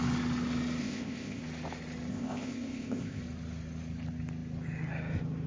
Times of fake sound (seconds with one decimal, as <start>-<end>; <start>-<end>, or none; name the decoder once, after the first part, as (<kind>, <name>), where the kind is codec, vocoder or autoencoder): 0.8-1.4 (codec, ZipCodec); 2.1-3.2